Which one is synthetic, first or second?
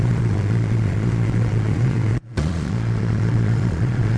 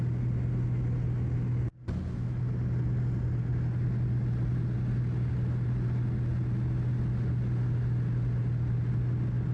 first